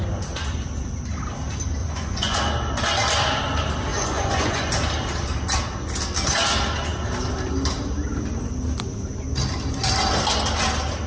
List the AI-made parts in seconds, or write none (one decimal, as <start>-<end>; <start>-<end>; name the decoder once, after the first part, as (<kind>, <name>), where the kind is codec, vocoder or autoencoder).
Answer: 1.8-2.4 (vocoder, Vocos); 3.9-4.7